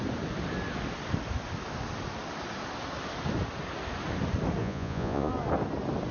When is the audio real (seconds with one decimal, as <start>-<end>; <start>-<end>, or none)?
0.0-4.6; 5.3-6.1